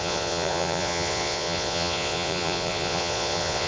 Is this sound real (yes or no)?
no